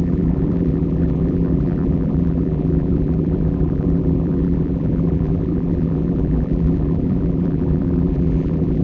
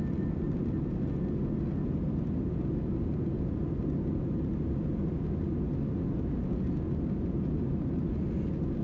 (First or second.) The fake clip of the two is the first